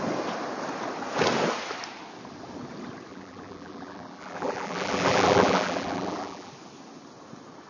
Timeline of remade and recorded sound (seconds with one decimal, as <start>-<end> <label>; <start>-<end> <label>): 0.0-3.1 recorded; 3.1-6.5 remade; 6.5-7.7 recorded